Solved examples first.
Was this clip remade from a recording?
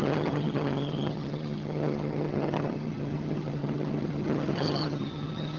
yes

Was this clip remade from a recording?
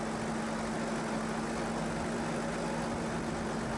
no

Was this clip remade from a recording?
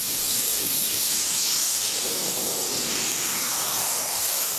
yes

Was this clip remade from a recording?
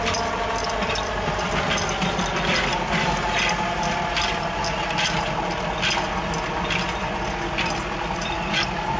no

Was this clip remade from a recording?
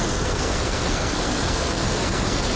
yes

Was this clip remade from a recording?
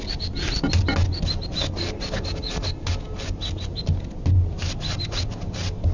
no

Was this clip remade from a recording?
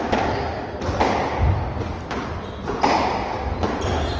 no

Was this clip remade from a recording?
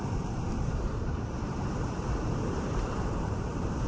yes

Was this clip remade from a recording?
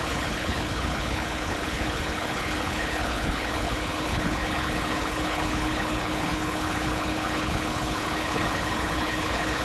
yes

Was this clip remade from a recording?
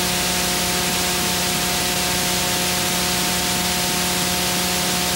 no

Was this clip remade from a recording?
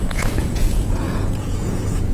yes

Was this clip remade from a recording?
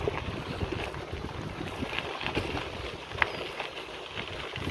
no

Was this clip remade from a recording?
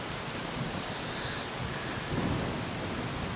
no